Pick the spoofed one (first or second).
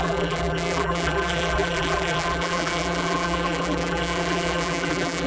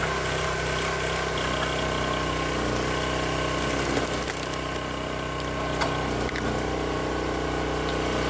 first